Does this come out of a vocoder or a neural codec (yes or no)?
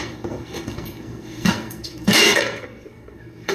yes